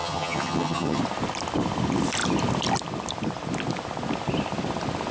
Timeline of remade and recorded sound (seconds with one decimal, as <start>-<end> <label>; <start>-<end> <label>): 0.0-1.0 remade; 1.0-5.1 recorded